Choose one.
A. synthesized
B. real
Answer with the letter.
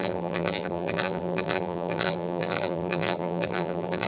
A